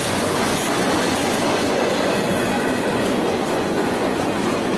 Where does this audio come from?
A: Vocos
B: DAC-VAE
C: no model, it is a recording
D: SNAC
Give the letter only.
A